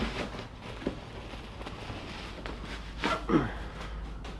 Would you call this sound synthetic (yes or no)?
no